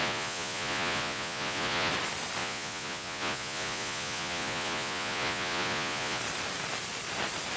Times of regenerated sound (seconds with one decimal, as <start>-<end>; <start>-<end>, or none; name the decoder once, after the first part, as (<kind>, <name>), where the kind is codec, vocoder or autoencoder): 0.0-1.9 (vocoder, Vocos); 2.4-6.2